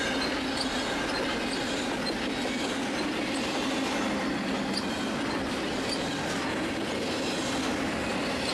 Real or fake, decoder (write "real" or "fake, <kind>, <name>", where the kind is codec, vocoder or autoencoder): real